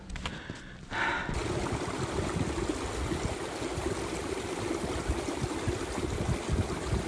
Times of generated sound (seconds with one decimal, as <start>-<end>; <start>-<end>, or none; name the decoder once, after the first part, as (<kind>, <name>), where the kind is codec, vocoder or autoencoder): none